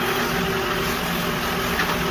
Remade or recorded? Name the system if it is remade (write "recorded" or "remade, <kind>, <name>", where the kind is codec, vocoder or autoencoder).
recorded